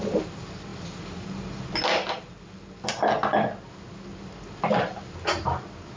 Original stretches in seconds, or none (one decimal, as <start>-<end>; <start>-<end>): 0.0-6.0